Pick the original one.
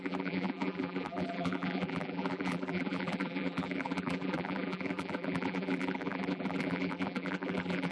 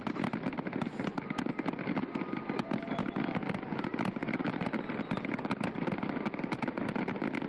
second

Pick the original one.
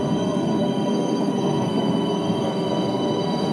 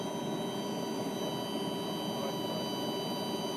second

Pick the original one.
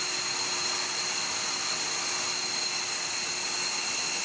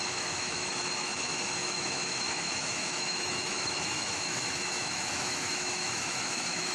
first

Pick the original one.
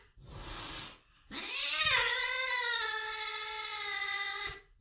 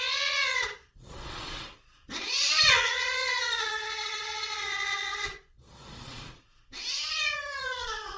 first